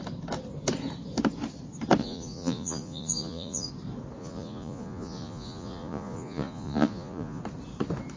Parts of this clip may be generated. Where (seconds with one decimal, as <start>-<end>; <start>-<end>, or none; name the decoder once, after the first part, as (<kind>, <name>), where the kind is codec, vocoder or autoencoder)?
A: 2.0-3.7 (vocoder, Vocos); 4.2-7.4